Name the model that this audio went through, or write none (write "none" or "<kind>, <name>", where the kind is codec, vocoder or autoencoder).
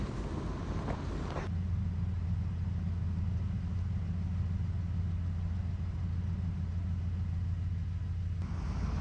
none